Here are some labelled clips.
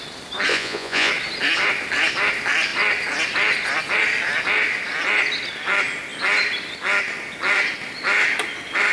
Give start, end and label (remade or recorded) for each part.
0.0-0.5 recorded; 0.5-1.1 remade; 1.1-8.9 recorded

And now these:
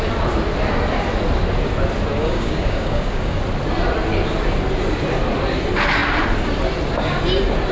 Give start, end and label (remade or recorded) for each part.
0.0-2.2 recorded; 2.2-3.4 remade; 3.4-7.7 recorded

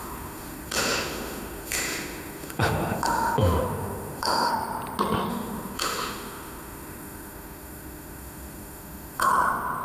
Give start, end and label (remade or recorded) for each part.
0.0-4.5 remade; 4.5-5.3 recorded; 5.3-9.3 remade; 9.3-9.8 recorded

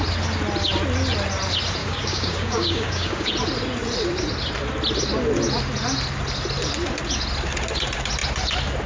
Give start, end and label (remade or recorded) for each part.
0.0-1.8 recorded; 1.8-3.3 remade; 3.3-8.9 recorded